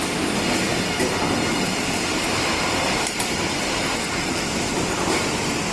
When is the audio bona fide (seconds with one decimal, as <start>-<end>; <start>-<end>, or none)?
0.0-5.7